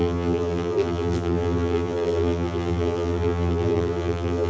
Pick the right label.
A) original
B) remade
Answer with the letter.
B